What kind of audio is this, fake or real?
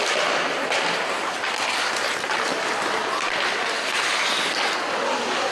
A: real